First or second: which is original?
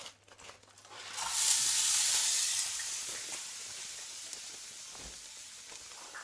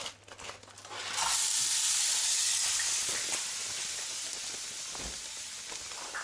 second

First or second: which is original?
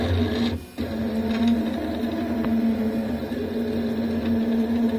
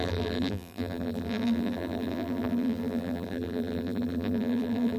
first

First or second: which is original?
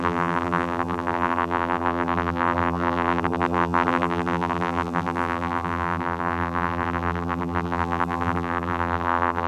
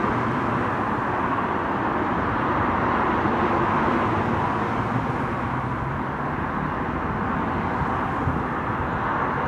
second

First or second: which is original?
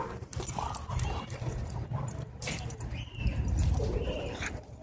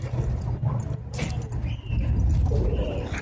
second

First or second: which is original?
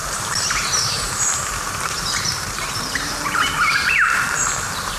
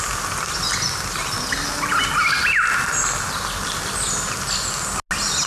second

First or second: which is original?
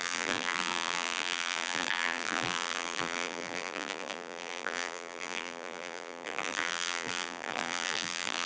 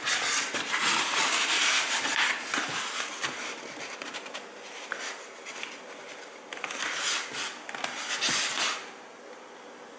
second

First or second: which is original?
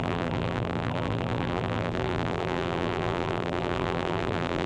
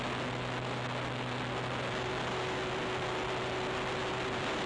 second